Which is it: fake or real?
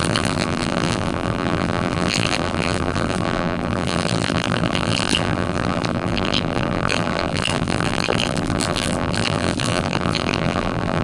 fake